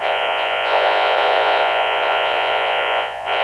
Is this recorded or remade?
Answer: remade